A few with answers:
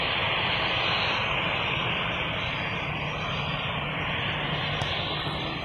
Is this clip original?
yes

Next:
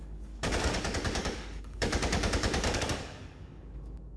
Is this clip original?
no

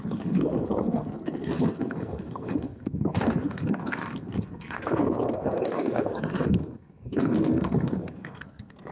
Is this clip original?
no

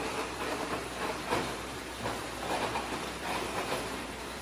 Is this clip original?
no